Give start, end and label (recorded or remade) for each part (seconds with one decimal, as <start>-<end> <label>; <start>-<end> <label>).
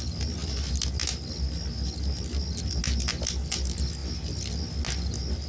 0.0-5.5 recorded